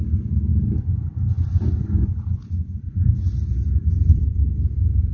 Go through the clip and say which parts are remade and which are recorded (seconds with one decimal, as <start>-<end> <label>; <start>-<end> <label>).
0.0-5.1 recorded